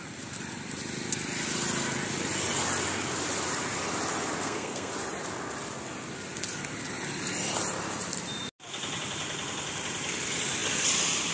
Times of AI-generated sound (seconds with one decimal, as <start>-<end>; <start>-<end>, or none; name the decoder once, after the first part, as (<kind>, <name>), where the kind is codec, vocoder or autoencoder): 4.4-4.9 (codec, SNAC)